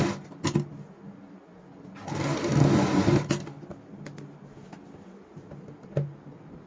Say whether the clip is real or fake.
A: real